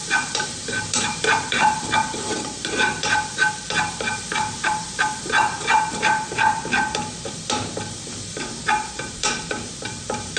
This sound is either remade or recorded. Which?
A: remade